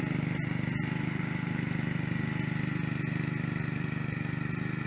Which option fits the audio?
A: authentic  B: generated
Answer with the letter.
A